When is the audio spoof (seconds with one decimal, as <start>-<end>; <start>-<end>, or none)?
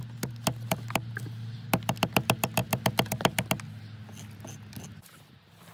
none